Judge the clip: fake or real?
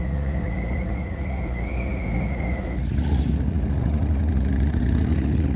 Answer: fake